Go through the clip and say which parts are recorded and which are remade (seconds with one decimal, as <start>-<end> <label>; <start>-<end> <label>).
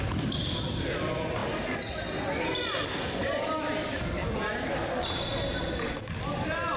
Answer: 0.0-6.8 recorded